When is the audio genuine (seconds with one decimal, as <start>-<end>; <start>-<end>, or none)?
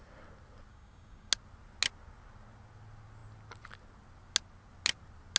0.0-0.7; 1.3-5.4